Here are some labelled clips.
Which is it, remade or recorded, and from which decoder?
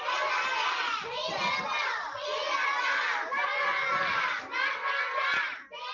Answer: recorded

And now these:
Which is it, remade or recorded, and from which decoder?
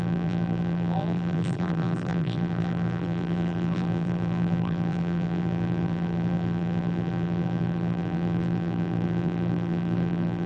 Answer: remade, vocoder, BigVGAN v2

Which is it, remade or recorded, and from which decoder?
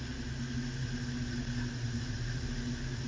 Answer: recorded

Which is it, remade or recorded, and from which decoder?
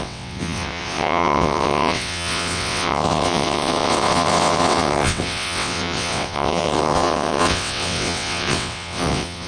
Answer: remade, vocoder, WaveNeXt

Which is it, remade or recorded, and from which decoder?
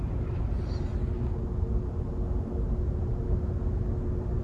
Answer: recorded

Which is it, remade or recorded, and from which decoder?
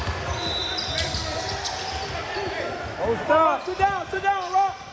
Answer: recorded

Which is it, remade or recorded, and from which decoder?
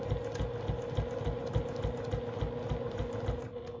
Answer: recorded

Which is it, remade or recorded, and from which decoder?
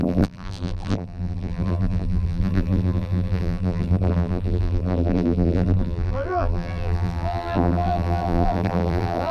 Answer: remade, vocoder, BigVGAN v2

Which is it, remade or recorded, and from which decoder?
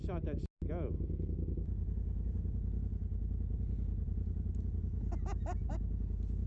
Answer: recorded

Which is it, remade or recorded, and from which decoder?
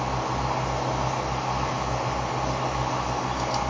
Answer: recorded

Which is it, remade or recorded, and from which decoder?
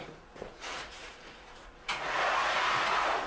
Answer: remade, vocoder, Vocos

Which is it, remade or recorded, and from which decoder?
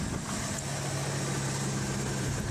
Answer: recorded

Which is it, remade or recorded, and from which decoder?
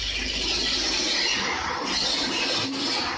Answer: recorded